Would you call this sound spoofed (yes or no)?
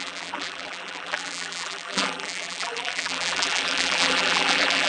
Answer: yes